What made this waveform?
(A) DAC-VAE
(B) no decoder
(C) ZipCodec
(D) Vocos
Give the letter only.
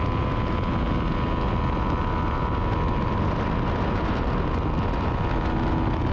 B